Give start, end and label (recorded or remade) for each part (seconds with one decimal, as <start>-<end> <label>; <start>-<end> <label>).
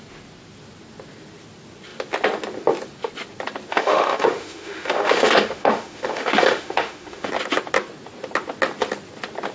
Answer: 0.0-3.7 recorded; 3.7-7.3 remade; 7.3-9.5 recorded